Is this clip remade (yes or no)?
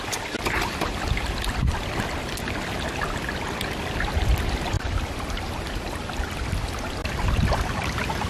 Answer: no